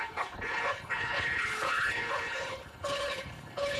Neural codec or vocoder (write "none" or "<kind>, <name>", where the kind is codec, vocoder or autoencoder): codec, HILCodec